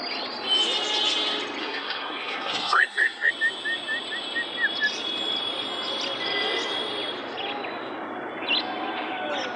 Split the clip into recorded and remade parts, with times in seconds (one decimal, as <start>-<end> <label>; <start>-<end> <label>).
0.0-1.6 recorded; 1.6-3.3 remade; 3.3-9.6 recorded